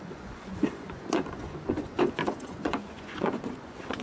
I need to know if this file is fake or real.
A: fake